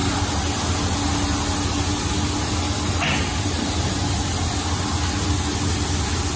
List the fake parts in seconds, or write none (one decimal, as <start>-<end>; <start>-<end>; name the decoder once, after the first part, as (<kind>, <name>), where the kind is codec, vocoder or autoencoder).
none